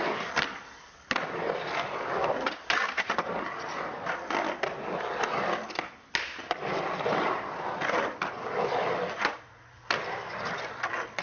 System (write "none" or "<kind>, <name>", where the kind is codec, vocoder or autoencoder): none